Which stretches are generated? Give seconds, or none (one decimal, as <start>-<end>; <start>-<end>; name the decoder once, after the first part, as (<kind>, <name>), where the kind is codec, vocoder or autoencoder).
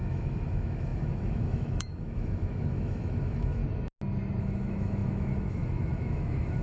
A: 0.0-3.6 (autoencoder, DAC-VAE); 4.4-6.6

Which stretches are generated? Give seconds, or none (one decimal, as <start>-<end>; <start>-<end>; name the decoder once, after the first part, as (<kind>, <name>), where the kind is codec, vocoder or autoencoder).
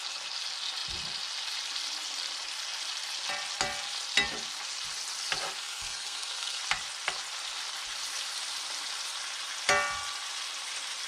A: 5.6-6.6 (codec, SNAC)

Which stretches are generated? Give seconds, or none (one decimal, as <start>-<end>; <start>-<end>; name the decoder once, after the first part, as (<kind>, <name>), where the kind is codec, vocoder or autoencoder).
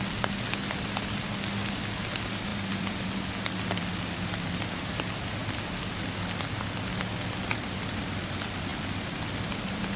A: 2.5-3.9 (vocoder, BigVGAN v2)